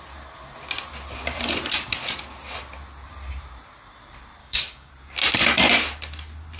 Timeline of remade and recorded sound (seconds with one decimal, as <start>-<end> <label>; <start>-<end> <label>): 0.0-4.4 recorded; 4.4-4.9 remade; 4.9-6.6 recorded